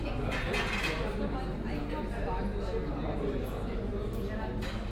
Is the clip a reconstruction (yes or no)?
no